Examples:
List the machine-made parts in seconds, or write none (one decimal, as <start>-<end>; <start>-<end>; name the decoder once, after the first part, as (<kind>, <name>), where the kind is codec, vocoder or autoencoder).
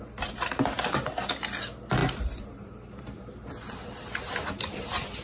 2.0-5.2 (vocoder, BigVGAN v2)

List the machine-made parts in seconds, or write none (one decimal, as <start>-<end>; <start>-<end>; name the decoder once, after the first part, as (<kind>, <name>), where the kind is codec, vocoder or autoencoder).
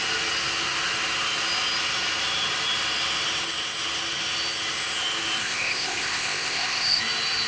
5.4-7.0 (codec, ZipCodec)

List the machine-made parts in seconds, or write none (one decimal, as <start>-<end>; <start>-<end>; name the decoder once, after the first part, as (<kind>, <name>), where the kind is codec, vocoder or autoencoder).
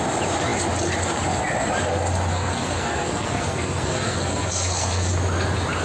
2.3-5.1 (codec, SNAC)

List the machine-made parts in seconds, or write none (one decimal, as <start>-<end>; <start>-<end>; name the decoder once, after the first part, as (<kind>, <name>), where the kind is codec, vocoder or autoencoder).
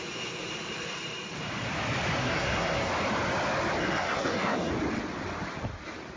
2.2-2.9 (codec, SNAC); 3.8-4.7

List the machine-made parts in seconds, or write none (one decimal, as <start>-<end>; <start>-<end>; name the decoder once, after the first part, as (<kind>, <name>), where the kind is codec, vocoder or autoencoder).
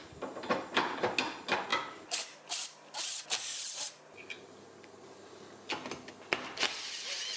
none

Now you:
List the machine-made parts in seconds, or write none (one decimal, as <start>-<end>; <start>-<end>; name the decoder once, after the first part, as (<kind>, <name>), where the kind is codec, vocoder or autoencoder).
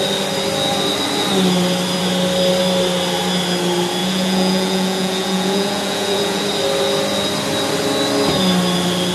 4.0-6.4 (vocoder, Vocos)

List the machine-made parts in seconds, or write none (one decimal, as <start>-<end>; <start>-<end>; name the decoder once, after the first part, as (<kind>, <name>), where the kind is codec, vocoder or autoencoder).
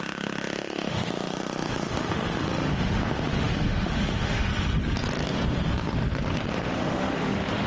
0.0-4.5 (autoencoder, DAC-VAE); 6.5-7.7